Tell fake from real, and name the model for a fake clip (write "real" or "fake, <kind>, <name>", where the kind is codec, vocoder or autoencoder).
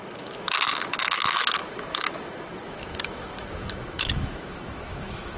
fake, autoencoder, DAC-VAE